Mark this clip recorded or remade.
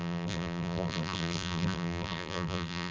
remade